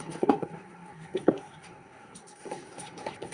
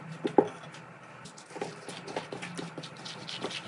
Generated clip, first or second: first